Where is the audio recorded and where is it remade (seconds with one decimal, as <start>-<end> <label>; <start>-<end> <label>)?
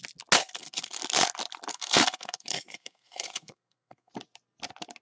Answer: 0.0-0.4 recorded; 0.4-1.0 remade; 1.0-1.7 recorded; 1.7-4.1 remade; 4.1-5.0 recorded